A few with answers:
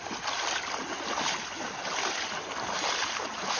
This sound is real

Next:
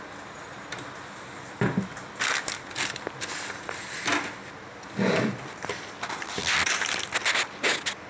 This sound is real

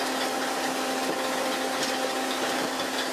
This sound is real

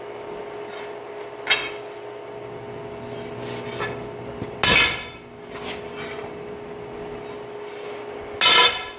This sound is real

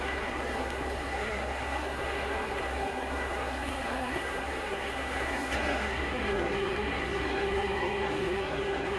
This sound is fake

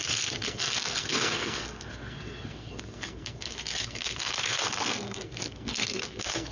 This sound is fake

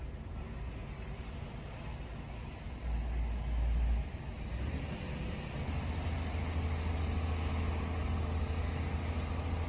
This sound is real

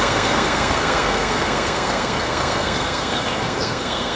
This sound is fake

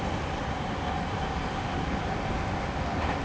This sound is real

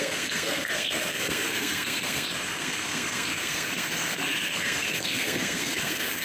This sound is fake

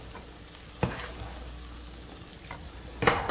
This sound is real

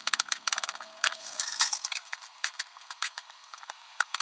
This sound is fake